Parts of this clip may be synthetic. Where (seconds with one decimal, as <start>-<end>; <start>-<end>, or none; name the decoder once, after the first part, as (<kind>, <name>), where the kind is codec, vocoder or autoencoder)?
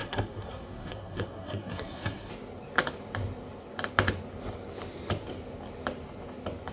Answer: 0.0-2.3 (codec, SNAC)